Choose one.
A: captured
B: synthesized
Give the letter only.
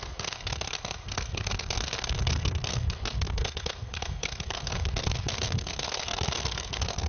B